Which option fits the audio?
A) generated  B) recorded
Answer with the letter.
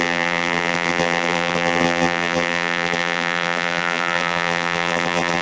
A